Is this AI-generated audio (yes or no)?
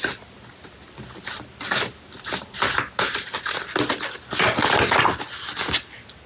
no